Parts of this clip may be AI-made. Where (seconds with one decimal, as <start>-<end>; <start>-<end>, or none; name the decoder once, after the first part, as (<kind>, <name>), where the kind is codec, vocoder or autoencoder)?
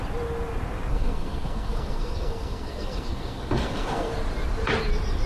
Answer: 0.9-4.1 (codec, SNAC)